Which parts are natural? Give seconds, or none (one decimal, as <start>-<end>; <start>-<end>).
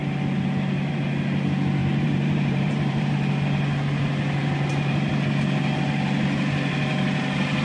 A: 0.0-1.8; 3.3-4.4; 5.1-7.6